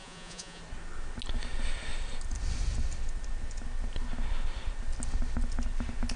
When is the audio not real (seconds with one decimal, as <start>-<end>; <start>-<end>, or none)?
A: 0.0-0.6